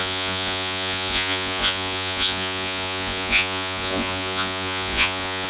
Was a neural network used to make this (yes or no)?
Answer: yes